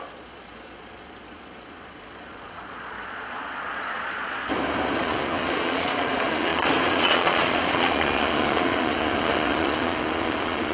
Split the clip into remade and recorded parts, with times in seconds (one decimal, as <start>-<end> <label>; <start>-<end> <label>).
0.0-4.4 remade; 4.4-5.0 recorded; 5.0-10.7 remade